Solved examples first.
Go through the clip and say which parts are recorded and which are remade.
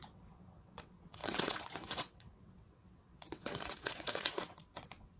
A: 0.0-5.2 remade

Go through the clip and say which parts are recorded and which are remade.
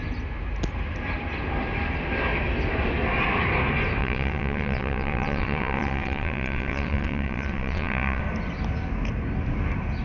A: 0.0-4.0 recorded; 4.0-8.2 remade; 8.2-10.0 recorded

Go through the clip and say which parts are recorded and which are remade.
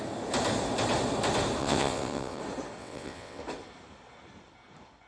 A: 0.0-1.6 recorded; 1.6-2.4 remade; 2.4-2.8 recorded; 2.8-3.4 remade; 3.4-5.1 recorded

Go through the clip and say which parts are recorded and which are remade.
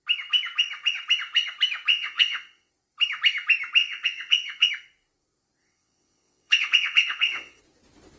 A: 0.0-1.9 recorded; 1.9-2.7 remade; 2.7-3.8 recorded; 3.8-4.7 remade; 4.7-5.6 recorded; 5.6-7.6 remade; 7.6-8.2 recorded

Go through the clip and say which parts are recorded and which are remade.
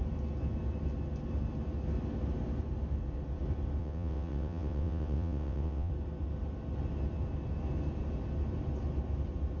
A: 0.0-3.8 recorded; 3.8-5.9 remade; 5.9-9.6 recorded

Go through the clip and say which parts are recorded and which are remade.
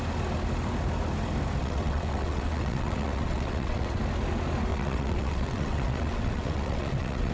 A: 0.0-1.6 recorded; 1.6-4.0 remade; 4.0-4.7 recorded; 4.7-7.3 remade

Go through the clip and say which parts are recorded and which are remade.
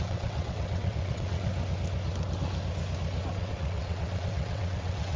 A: 0.0-1.5 remade; 1.5-3.3 recorded; 3.3-5.2 remade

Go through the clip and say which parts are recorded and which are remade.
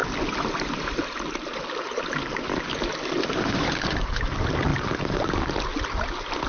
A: 0.0-6.5 recorded